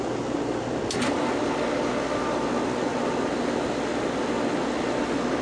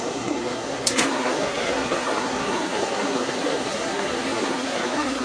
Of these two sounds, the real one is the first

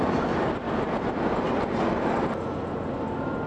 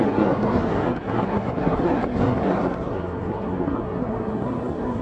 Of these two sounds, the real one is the first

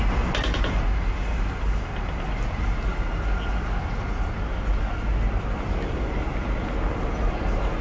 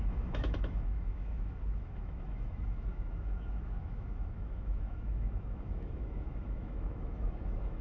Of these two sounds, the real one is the first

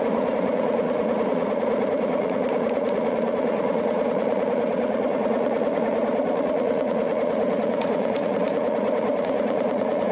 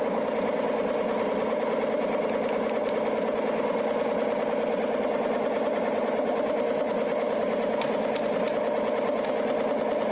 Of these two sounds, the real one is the second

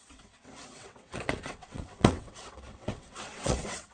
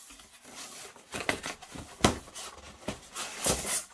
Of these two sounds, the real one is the second